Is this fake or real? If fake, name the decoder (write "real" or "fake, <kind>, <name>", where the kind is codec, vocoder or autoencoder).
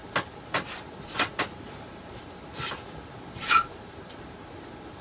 real